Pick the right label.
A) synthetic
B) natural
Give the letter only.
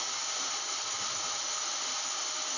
B